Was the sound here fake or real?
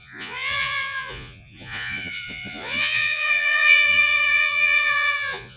fake